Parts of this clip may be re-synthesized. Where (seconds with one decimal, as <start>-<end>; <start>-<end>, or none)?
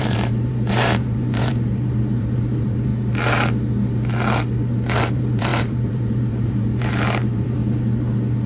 0.0-2.9; 5.1-7.6